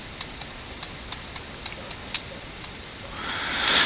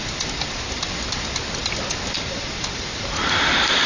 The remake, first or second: second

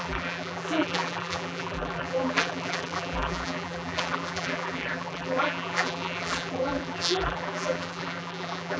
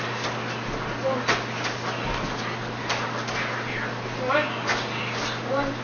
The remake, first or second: first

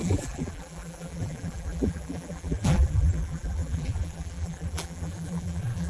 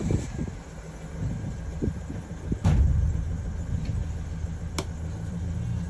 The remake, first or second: first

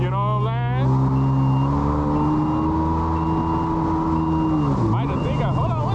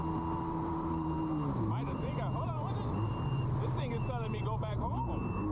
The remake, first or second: second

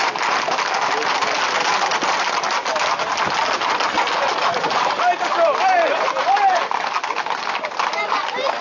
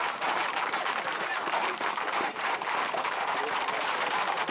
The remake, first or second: second